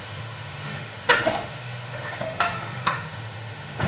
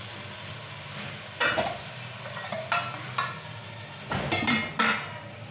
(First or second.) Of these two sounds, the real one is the second